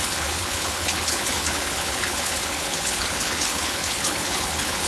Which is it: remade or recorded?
remade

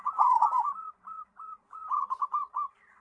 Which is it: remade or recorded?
remade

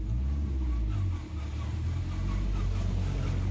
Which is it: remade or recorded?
recorded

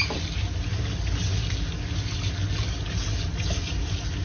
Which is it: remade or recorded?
recorded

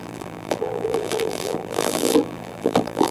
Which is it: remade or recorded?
remade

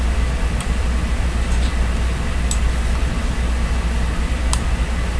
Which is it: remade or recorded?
recorded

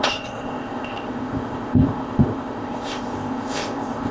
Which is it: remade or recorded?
remade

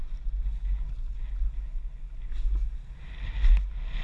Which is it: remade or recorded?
recorded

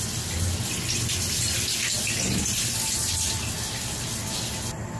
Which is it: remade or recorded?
recorded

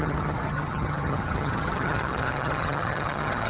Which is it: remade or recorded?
remade